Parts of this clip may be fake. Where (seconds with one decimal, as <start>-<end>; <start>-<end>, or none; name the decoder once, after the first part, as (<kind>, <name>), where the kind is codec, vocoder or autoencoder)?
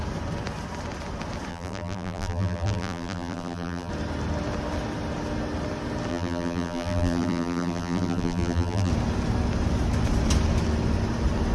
1.5-3.9 (vocoder, BigVGAN v2); 6.1-8.9